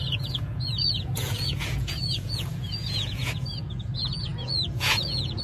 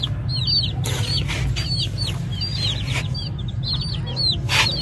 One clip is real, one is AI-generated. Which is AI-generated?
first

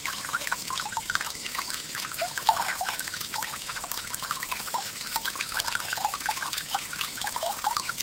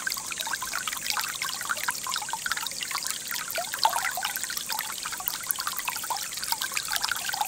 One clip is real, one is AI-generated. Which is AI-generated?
first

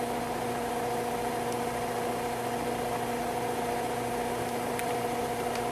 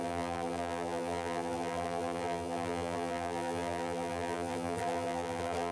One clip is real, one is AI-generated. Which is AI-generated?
second